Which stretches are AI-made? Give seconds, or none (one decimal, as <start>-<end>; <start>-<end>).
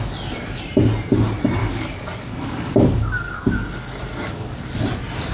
1.6-4.8